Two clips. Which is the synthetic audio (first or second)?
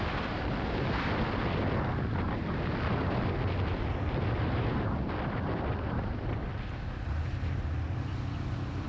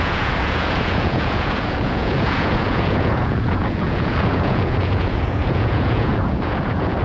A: second